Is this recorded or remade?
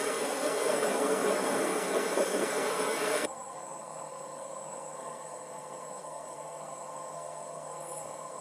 remade